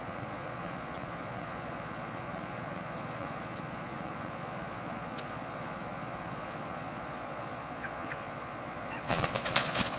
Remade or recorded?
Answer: remade